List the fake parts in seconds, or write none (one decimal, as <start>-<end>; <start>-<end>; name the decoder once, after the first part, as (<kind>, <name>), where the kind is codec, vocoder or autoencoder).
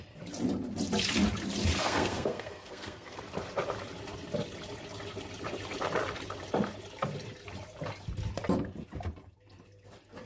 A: 1.8-3.2 (codec, SNAC)